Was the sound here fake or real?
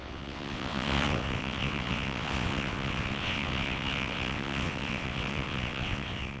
fake